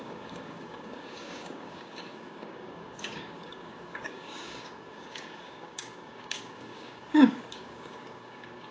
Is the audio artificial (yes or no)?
yes